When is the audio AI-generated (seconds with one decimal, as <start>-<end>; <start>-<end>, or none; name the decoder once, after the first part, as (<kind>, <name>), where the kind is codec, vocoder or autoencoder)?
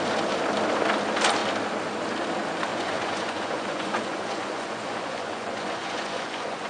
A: 2.7-6.7 (vocoder, Vocos)